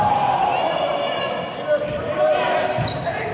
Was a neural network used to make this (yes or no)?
no